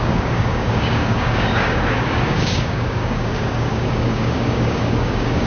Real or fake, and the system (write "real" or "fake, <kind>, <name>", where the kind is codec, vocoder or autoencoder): fake, codec, DAC